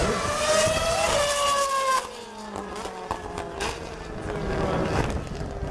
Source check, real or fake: real